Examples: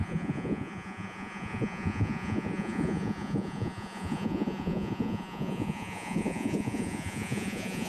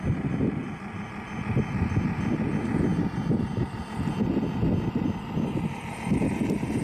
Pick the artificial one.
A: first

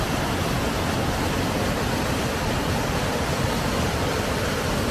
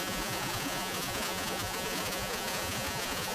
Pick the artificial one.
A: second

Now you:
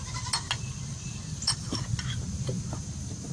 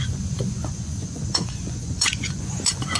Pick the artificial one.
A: second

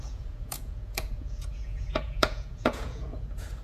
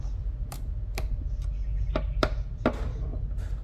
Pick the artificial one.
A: first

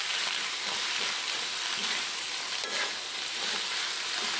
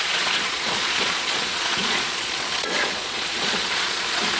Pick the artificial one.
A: second